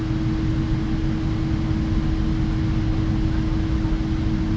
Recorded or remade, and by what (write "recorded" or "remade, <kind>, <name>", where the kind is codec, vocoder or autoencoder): recorded